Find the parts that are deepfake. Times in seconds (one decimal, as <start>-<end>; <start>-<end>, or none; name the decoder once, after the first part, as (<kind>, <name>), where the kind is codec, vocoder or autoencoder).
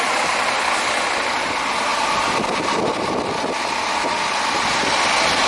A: none